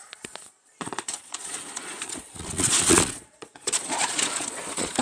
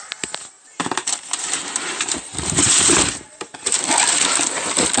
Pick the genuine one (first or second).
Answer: second